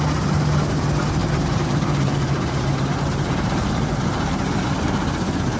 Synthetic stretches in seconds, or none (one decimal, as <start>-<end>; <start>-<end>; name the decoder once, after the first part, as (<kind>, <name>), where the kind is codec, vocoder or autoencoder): 1.2-4.6 (vocoder, BigVGAN v2)